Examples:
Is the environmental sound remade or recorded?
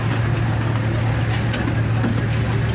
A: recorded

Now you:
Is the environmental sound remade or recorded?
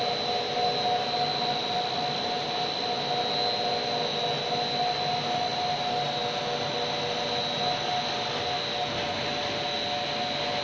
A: recorded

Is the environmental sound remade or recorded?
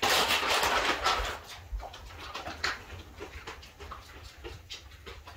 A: recorded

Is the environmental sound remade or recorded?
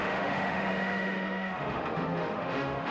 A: remade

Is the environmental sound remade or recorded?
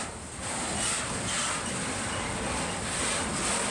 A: recorded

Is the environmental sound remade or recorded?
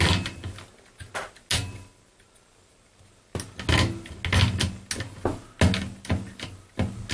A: recorded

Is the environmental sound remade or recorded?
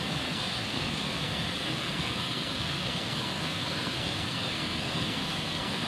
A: remade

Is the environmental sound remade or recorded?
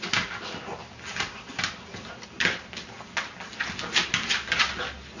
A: recorded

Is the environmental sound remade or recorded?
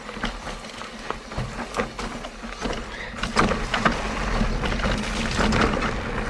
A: recorded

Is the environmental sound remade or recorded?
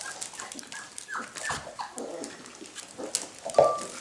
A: recorded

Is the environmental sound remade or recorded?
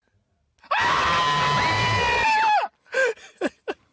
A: recorded